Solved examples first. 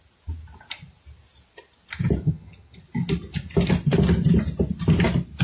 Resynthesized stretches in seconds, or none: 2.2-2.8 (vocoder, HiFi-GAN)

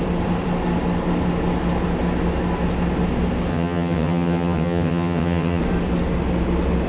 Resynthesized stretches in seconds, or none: 3.5-5.6 (vocoder, HiFi-GAN)

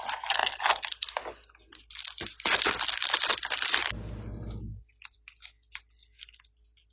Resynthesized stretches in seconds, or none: none

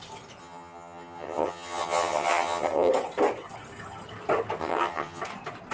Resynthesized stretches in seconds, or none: 0.4-2.9 (vocoder, HiFi-GAN); 4.6-5.2

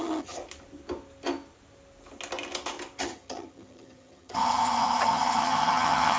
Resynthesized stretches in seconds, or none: 0.0-0.4 (vocoder, HiFi-GAN); 3.0-6.2